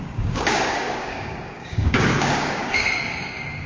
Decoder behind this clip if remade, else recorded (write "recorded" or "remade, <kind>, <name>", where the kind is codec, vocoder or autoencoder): remade, codec, DAC